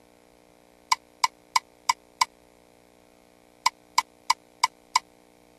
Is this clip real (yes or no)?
yes